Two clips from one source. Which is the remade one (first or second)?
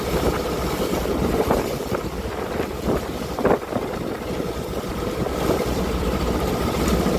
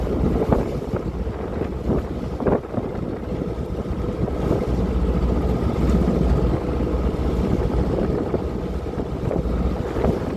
first